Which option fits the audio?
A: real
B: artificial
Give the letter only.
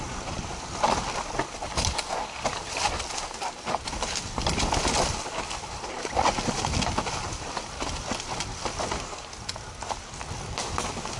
A